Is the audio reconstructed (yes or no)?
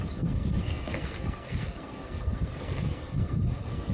yes